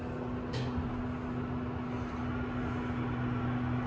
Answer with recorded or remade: recorded